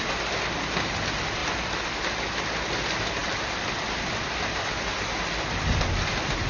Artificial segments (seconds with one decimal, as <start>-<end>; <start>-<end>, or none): 1.4-2.1; 3.2-4.6